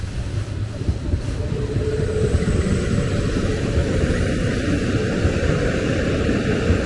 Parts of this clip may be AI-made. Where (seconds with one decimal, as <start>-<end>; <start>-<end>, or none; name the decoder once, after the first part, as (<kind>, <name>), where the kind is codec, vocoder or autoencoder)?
0.0-3.8 (vocoder, BigVGAN v2); 5.5-6.9